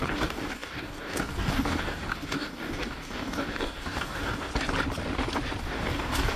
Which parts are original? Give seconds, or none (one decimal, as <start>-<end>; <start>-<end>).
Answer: 4.5-5.6